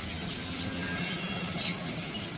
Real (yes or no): yes